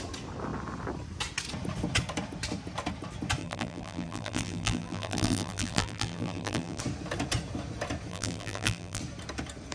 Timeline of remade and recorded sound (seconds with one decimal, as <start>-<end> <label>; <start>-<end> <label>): 0.0-3.4 recorded; 3.4-6.8 remade; 6.8-8.1 recorded; 8.1-9.0 remade; 9.0-9.7 recorded